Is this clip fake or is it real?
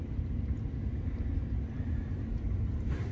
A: fake